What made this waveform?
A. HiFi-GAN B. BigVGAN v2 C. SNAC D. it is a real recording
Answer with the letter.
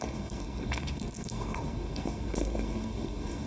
C